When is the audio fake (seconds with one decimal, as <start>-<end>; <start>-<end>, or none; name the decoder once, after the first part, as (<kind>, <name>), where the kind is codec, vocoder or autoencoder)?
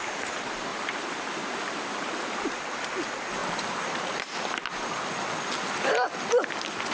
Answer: 0.7-2.8 (vocoder, BigVGAN v2); 3.4-4.7